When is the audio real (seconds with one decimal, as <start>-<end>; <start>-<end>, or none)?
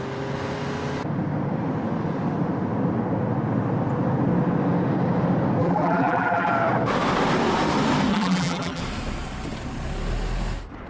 0.0-5.6; 6.5-8.1; 8.8-10.9